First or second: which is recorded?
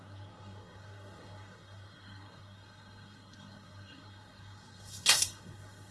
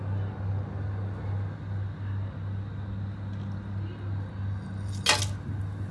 second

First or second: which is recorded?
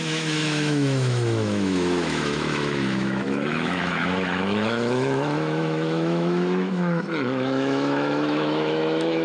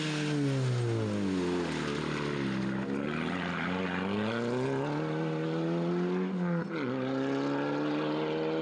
second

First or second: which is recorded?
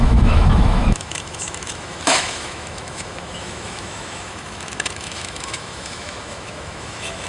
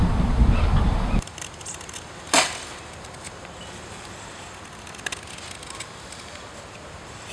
second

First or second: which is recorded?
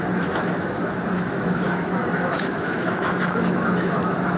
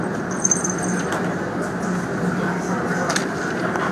second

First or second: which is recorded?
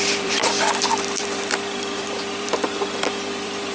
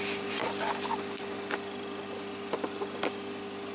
second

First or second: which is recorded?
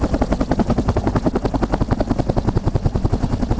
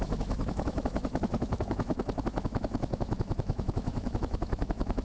first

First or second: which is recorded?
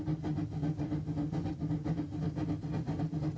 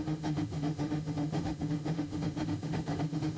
first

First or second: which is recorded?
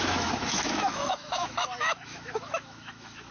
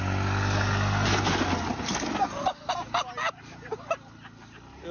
second